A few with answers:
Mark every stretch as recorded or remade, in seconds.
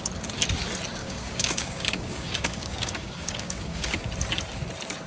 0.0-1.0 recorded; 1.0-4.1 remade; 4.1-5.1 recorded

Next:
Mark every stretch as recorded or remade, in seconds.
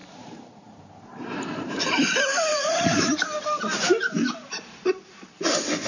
0.0-1.8 remade; 1.8-2.5 recorded; 2.5-5.1 remade; 5.1-5.9 recorded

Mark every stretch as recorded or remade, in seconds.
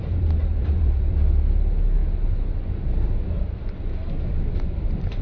0.0-2.0 remade; 2.0-4.2 recorded; 4.2-5.2 remade